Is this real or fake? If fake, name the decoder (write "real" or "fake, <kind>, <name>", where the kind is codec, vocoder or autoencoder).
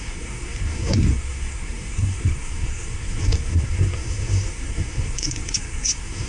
fake, codec, SNAC